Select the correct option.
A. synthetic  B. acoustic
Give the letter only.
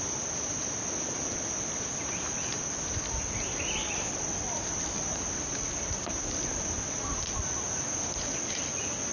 B